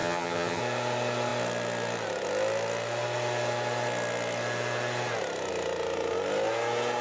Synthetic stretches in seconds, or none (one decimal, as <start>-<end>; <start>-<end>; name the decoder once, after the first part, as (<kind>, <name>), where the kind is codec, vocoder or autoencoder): 0.0-0.6 (vocoder, HiFi-GAN)